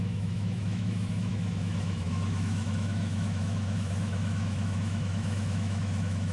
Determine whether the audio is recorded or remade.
remade